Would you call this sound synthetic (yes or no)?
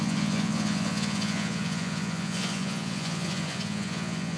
yes